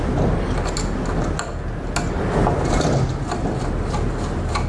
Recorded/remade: recorded